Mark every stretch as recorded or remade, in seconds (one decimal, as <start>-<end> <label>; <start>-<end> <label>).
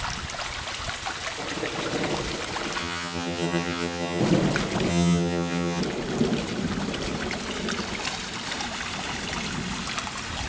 0.0-2.8 recorded; 2.8-4.2 remade; 4.2-4.9 recorded; 4.9-5.8 remade; 5.8-10.5 recorded